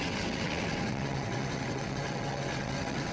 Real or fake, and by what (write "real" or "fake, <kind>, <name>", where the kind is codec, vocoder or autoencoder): fake, vocoder, WaveNeXt